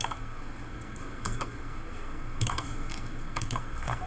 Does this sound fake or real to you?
fake